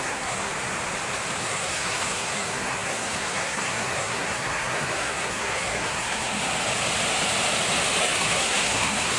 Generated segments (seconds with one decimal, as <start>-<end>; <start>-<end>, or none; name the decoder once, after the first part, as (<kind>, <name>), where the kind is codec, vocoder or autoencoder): 0.0-0.5 (codec, SNAC); 1.4-6.4; 8.0-9.2